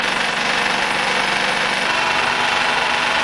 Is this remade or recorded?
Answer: recorded